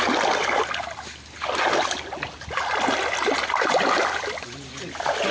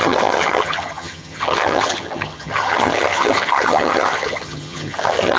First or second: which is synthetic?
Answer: second